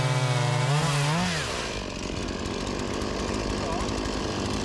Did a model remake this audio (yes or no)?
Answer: no